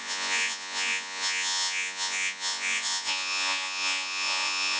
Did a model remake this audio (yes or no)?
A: yes